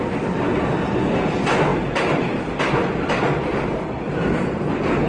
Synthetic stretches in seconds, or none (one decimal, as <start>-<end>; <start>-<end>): none